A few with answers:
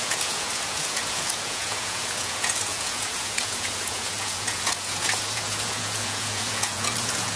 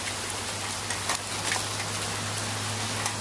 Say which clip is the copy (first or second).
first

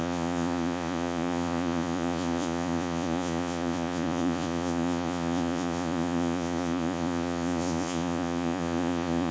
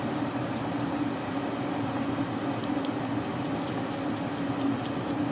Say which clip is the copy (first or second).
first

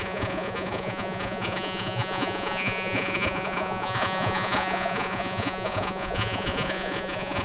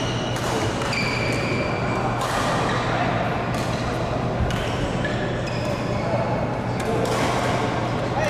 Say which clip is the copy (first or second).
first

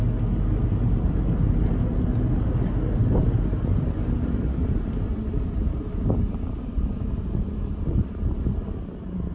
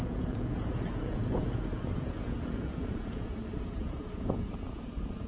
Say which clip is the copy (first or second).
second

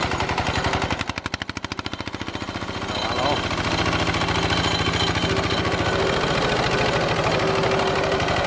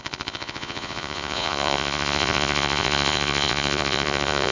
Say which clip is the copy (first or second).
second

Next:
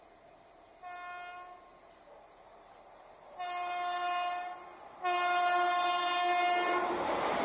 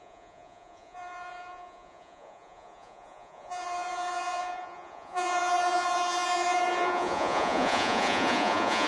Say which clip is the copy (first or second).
second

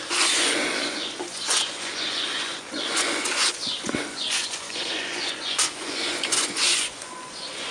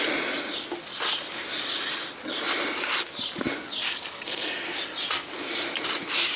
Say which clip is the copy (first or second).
first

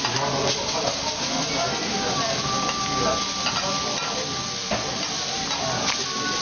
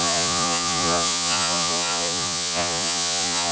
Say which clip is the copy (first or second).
second